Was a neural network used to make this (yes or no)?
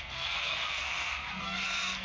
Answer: yes